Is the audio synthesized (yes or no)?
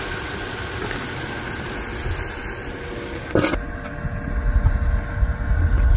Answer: no